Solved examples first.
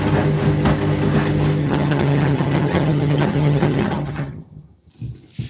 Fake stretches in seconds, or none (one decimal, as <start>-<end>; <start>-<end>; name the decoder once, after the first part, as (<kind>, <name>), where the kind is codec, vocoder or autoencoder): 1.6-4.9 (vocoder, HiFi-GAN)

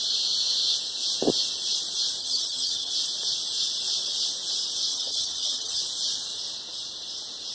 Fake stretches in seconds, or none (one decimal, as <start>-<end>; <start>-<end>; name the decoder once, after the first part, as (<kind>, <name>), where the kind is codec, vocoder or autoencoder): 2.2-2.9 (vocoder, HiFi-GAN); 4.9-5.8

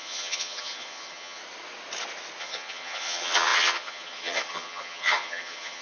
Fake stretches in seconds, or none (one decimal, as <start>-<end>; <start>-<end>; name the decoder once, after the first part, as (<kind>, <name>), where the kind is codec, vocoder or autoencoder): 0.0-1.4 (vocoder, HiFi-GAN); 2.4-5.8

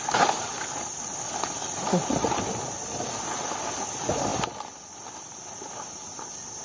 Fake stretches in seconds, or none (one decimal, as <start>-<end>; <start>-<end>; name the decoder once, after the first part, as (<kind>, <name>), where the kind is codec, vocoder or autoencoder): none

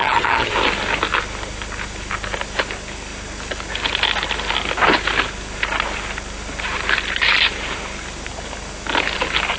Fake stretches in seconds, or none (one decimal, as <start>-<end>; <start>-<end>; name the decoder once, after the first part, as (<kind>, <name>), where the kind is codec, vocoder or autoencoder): 0.0-0.5 (vocoder, HiFi-GAN)

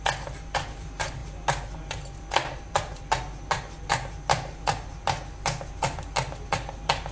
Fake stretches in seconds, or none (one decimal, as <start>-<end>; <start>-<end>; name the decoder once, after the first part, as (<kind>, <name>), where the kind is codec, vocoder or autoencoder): none

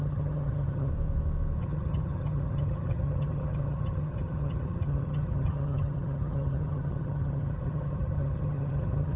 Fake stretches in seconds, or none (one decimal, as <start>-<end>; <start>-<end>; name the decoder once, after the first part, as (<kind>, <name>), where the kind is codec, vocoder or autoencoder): 0.0-0.9 (vocoder, HiFi-GAN); 1.6-9.2